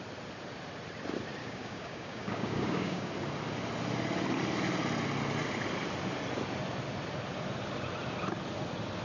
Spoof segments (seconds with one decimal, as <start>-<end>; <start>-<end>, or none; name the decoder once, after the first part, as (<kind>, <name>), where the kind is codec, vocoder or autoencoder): 1.4-3.1 (codec, DAC)